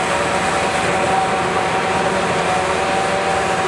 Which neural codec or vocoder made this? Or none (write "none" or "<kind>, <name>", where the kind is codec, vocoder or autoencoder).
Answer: none